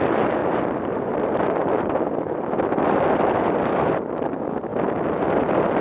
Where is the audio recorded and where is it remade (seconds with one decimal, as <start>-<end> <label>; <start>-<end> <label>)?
0.0-4.7 remade; 4.7-5.3 recorded; 5.3-5.8 remade